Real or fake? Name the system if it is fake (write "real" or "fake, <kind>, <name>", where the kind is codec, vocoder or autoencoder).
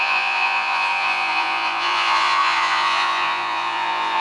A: fake, vocoder, Vocos